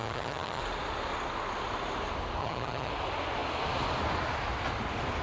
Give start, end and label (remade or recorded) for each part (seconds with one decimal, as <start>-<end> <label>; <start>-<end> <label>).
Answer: 0.0-0.6 remade; 0.6-2.4 recorded; 2.4-2.9 remade; 2.9-5.2 recorded